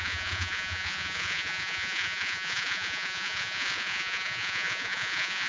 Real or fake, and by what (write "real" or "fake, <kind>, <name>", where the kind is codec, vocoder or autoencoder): fake, vocoder, Vocos